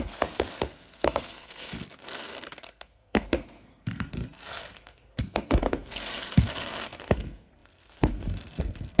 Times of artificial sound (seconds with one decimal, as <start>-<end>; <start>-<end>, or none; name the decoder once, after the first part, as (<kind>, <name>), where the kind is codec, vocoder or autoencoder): 0.0-9.0 (codec, SNAC)